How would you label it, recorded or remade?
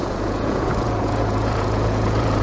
remade